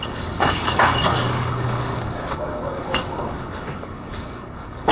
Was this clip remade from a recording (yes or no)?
yes